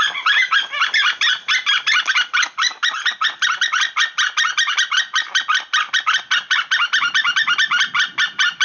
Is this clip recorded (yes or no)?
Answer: yes